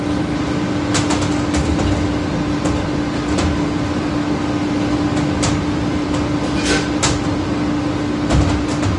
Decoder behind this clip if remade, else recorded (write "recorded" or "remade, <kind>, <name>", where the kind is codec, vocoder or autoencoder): recorded